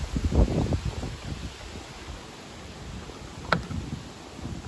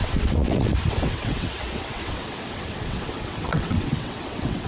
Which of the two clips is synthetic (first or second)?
second